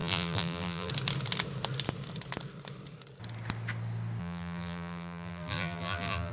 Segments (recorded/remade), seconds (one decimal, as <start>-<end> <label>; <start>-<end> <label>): 0.0-0.9 remade; 0.9-4.2 recorded; 4.2-6.3 remade